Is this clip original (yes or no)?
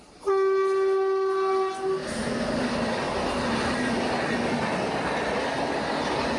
yes